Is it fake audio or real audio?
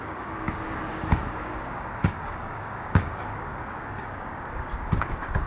fake